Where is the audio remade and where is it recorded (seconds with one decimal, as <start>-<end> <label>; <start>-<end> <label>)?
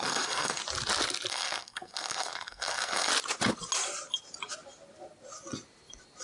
0.0-0.6 remade; 0.6-1.3 recorded; 1.3-3.1 remade; 3.1-6.2 recorded